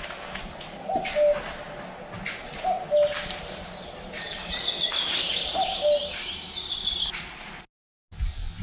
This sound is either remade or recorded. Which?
recorded